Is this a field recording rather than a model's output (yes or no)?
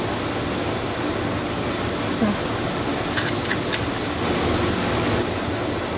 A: yes